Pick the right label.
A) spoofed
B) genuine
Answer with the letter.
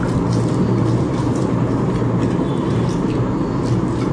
B